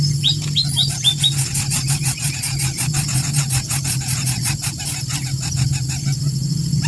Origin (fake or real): real